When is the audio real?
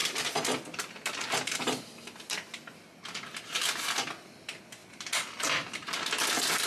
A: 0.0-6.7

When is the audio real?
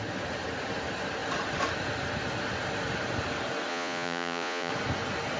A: 0.0-3.7; 4.7-5.4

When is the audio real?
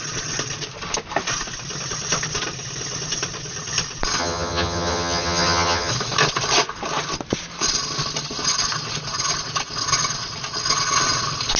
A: 0.0-4.2; 5.9-11.6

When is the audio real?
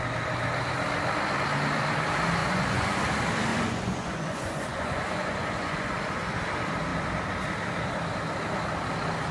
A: 0.0-2.4; 3.0-3.5; 6.0-9.3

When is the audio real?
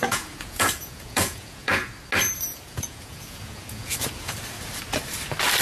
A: 1.9-2.5; 4.3-5.6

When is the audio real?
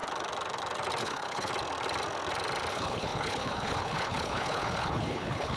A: 0.0-1.0; 1.5-2.7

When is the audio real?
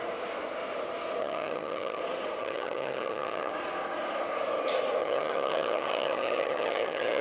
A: 0.0-1.2; 2.0-2.4; 3.5-5.0